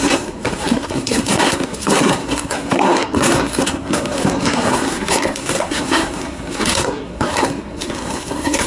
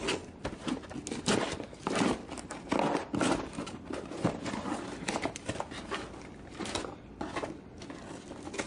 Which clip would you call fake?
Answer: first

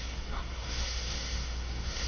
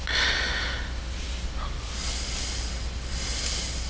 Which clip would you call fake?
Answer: first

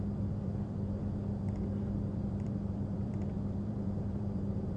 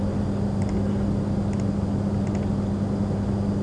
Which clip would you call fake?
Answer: first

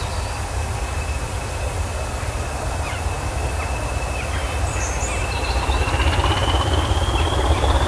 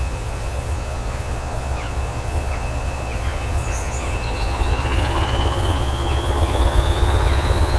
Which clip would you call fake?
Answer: second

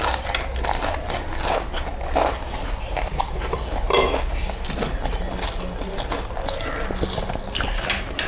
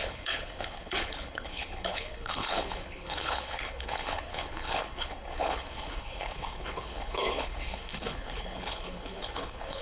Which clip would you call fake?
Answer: second